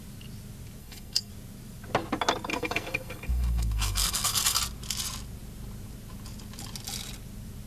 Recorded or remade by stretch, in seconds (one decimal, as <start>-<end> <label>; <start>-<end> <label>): 0.0-0.8 recorded; 0.8-1.3 remade; 1.3-2.5 recorded; 2.5-4.6 remade; 4.6-7.7 recorded